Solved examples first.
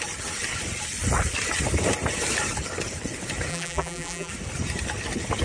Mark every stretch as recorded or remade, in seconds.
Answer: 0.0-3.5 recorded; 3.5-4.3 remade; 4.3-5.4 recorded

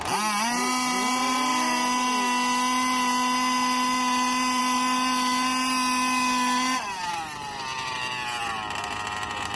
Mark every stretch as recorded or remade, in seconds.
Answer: 0.0-9.6 recorded

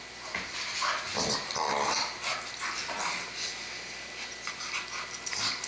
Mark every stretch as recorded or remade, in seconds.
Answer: 0.0-5.7 recorded

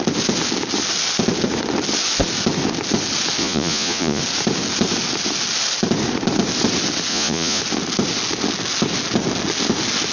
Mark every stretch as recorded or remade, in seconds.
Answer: 0.0-3.4 recorded; 3.4-4.2 remade; 4.2-7.1 recorded; 7.1-7.6 remade; 7.6-10.1 recorded

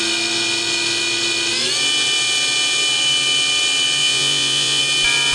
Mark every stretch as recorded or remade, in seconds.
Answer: 0.0-4.0 recorded; 4.0-4.8 remade; 4.8-5.3 recorded

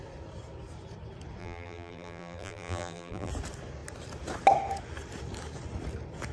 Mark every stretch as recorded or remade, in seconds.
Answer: 0.0-1.4 recorded; 1.4-3.3 remade; 3.3-6.3 recorded

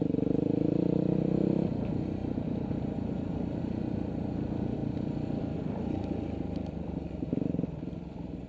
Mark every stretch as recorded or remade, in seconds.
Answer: 0.0-2.2 recorded; 2.2-3.8 remade; 3.8-8.5 recorded